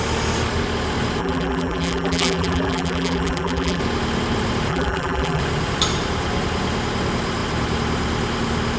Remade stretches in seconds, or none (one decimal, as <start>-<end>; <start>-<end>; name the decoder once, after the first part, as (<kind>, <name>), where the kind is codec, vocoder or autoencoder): 1.2-3.8 (vocoder, BigVGAN v2); 4.7-5.4